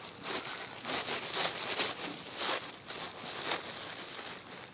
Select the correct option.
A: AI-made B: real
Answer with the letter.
B